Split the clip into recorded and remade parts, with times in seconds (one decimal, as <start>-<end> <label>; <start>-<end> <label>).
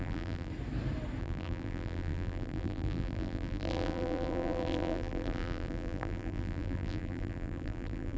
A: 0.0-0.5 remade; 0.5-1.2 recorded; 1.2-8.2 remade